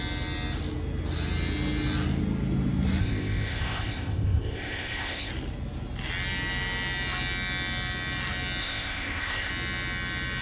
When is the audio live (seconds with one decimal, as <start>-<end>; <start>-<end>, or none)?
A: 0.0-3.0; 5.3-8.6; 9.5-10.4